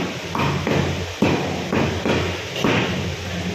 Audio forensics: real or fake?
real